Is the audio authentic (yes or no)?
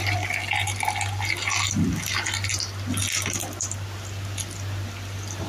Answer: yes